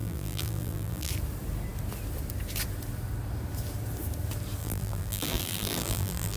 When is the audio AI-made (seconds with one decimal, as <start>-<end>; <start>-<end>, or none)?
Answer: 0.0-1.1; 4.6-6.4